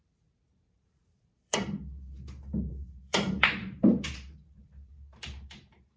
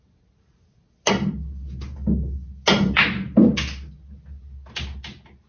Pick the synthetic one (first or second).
first